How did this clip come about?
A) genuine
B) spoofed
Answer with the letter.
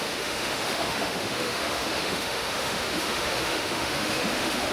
B